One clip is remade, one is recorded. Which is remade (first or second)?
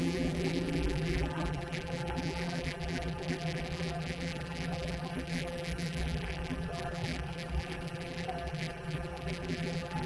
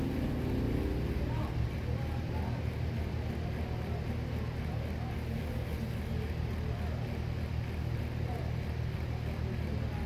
first